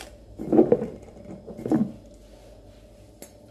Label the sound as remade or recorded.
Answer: recorded